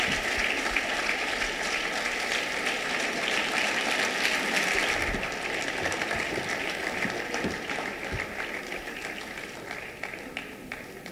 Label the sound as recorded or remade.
recorded